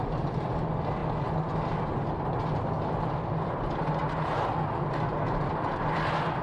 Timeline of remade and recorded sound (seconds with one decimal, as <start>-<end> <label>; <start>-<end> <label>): 0.0-1.0 remade; 1.0-2.8 recorded; 2.8-4.0 remade; 4.0-5.2 recorded; 5.2-6.4 remade